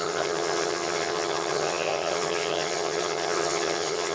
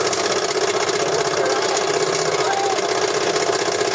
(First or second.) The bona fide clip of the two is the second